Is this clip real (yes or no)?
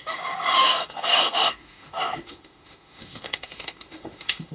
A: no